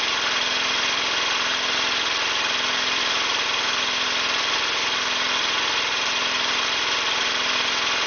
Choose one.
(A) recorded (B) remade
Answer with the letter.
A